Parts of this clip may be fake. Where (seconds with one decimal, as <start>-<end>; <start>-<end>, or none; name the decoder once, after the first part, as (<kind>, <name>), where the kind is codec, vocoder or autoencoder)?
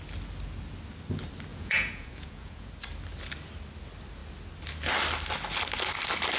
1.5-2.7 (vocoder, Vocos)